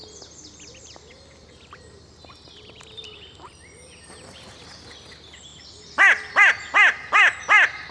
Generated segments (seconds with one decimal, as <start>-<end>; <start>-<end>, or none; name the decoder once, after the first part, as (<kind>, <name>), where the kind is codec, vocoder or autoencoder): none